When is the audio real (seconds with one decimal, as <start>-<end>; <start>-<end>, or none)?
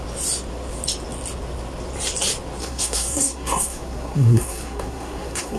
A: 0.0-2.6